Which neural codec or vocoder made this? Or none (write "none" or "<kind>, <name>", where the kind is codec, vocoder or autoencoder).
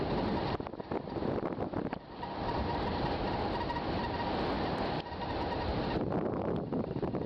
none